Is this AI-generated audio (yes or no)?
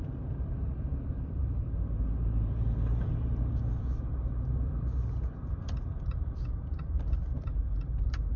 yes